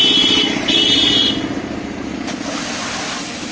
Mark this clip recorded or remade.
recorded